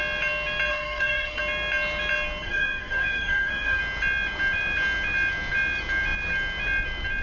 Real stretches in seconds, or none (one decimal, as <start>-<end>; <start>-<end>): 0.0-0.7; 1.4-2.4; 3.8-7.2